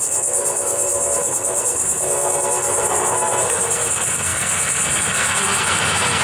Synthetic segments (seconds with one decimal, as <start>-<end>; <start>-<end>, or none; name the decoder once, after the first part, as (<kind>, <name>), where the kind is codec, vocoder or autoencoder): 0.0-6.2 (codec, SNAC)